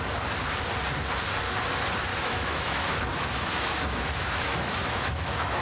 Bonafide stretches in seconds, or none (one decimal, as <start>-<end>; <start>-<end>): 0.0-2.1